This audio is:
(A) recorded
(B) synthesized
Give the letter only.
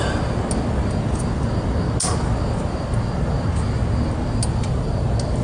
A